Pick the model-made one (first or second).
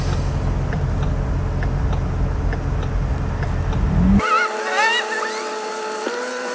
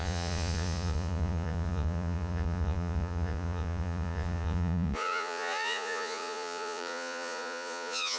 second